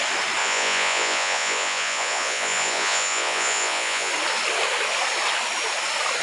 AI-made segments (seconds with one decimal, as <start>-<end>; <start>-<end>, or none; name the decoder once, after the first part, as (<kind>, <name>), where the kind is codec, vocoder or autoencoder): 0.4-4.1 (vocoder, Vocos)